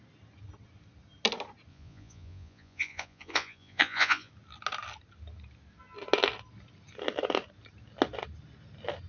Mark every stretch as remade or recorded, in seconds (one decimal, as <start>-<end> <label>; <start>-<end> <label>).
0.0-1.7 recorded; 1.7-4.3 remade; 4.3-9.1 recorded